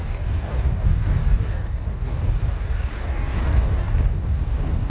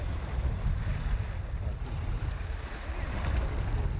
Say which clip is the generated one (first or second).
first